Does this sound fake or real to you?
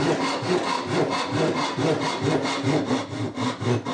real